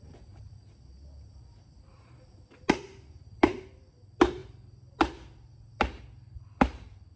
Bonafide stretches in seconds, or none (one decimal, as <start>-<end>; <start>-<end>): 0.0-7.2